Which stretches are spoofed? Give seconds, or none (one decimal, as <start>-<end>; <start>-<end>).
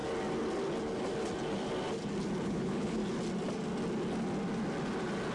2.4-3.0